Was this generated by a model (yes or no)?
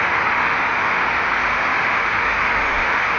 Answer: yes